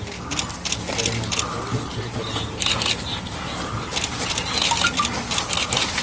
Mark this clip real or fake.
real